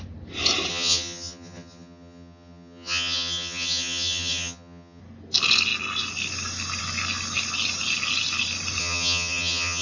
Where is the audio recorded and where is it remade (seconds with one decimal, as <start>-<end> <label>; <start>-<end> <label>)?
0.0-0.7 recorded; 0.7-5.0 remade; 5.0-8.8 recorded; 8.8-9.8 remade

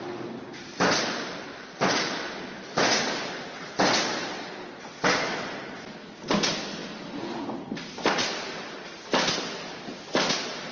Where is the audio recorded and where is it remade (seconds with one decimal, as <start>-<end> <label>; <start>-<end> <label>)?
0.0-10.7 recorded